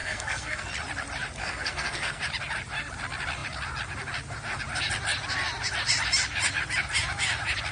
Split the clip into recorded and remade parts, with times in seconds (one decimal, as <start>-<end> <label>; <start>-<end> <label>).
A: 0.0-0.7 remade; 0.7-1.4 recorded; 1.4-2.2 remade; 2.2-7.7 recorded

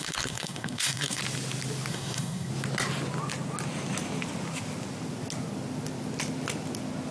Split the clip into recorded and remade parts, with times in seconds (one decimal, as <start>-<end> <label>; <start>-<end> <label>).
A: 0.0-1.2 remade; 1.2-1.9 recorded; 1.9-2.5 remade; 2.5-7.1 recorded

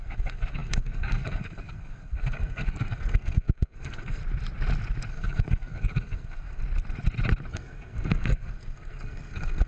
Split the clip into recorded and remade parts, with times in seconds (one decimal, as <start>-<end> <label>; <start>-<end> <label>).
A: 0.0-4.2 remade; 4.2-5.1 recorded; 5.1-6.6 remade; 6.6-7.5 recorded; 7.5-9.7 remade

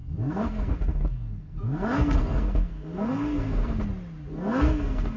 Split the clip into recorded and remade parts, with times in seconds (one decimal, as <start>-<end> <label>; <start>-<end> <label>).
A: 0.0-3.8 remade; 3.8-4.3 recorded; 4.3-5.2 remade